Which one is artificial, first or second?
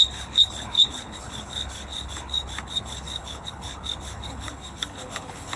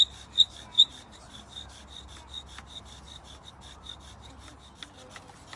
first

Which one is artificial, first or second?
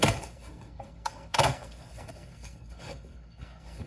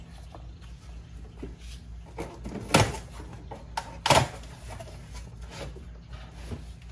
first